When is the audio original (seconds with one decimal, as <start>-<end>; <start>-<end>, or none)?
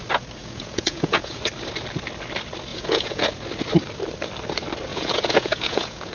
0.0-0.4; 1.4-2.7; 3.3-4.9